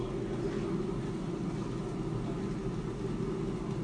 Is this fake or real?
real